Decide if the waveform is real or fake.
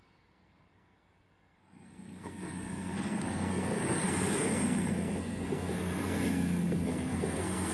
fake